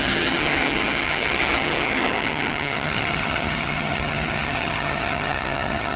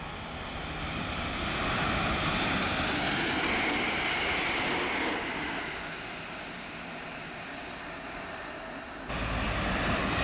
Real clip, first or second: second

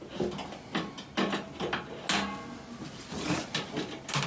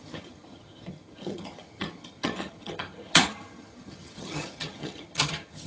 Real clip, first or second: first